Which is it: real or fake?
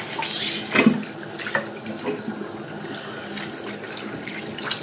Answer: real